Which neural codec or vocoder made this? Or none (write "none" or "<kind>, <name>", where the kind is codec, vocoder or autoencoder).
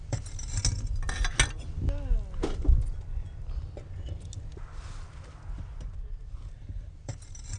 none